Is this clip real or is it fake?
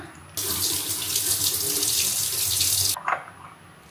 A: real